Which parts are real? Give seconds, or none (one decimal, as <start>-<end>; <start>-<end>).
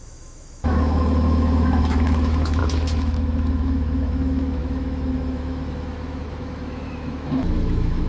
none